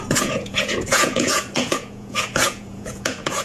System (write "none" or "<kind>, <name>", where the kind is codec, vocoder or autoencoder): vocoder, Vocos